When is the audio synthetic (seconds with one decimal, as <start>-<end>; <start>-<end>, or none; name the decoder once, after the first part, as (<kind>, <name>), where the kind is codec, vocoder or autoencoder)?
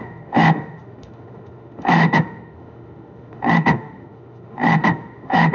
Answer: 0.0-5.5 (autoencoder, DAC-VAE)